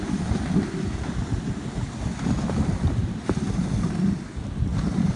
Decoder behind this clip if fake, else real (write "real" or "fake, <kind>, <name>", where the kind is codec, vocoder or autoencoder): real